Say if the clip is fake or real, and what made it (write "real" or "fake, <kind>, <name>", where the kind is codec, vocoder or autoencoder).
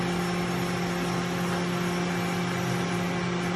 real